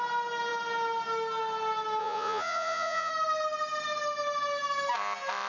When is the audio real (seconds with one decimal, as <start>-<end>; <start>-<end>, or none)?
0.0-2.0; 3.1-5.5